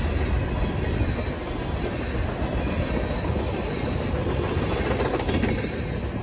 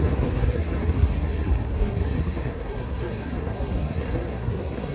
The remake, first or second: second